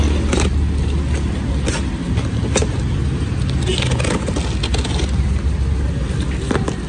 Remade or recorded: recorded